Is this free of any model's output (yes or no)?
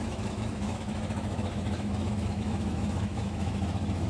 no